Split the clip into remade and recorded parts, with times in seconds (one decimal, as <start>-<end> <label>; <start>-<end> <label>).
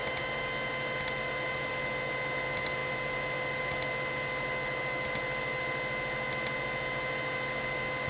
0.0-8.1 recorded